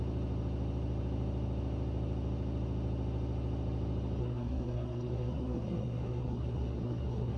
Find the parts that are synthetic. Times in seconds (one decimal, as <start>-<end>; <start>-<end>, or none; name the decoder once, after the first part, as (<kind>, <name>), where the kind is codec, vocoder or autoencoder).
4.2-7.4 (codec, SNAC)